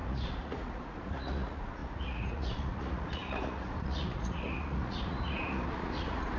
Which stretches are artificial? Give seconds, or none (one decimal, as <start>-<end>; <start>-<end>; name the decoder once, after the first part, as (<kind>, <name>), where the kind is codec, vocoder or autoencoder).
0.0-6.4 (vocoder, Vocos)